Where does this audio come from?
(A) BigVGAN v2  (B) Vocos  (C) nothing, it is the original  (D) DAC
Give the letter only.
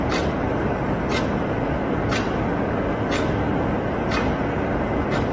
C